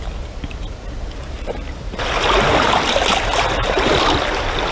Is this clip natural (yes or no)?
yes